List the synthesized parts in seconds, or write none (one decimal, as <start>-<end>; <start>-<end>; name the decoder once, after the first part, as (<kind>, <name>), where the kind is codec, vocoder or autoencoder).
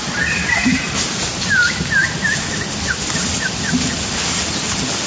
none